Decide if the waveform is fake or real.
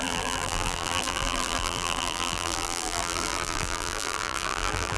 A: fake